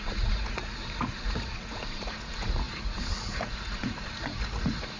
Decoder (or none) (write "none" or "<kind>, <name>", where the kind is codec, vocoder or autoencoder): vocoder, Vocos